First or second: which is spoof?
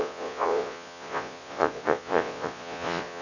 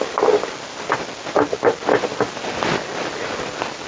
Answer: first